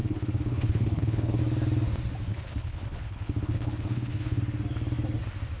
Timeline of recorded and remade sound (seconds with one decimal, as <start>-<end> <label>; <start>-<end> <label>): 0.0-1.4 remade; 1.4-2.3 recorded; 2.3-4.4 remade; 4.4-5.6 recorded